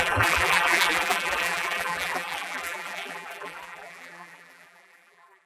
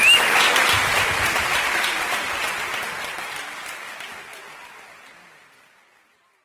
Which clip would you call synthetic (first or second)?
first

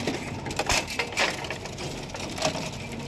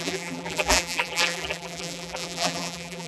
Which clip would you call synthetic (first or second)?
second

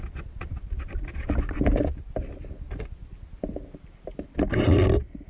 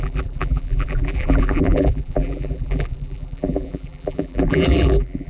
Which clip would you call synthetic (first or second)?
second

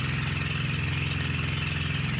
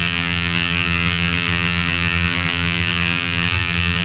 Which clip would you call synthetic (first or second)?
second